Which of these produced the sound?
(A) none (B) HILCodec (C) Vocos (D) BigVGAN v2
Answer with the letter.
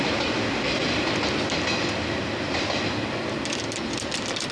A